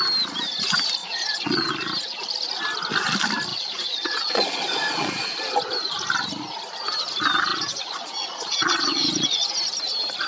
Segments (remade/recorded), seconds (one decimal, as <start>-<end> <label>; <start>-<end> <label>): 0.0-1.0 recorded; 1.0-1.7 remade; 1.7-3.5 recorded; 3.5-5.2 remade; 5.2-7.5 recorded; 7.5-9.5 remade; 9.5-10.3 recorded